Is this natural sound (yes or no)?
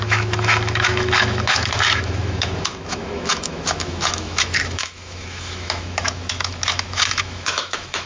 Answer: no